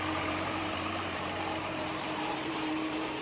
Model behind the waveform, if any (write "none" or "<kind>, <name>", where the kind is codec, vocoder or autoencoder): vocoder, BigVGAN v2